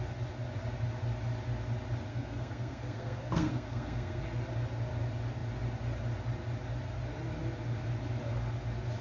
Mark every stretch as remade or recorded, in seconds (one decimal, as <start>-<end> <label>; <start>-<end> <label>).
0.0-2.1 recorded; 2.1-4.2 remade; 4.2-9.0 recorded